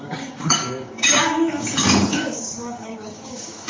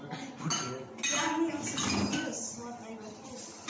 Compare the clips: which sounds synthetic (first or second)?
first